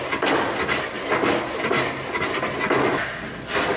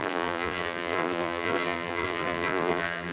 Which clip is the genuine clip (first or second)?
first